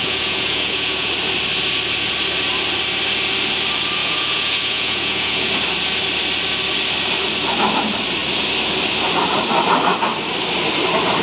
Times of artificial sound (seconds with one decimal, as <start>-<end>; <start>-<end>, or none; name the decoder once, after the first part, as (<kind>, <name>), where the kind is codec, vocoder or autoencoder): 0.0-1.1 (vocoder, Vocos); 4.0-5.5